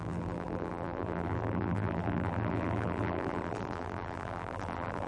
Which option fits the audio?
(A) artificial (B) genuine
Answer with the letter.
A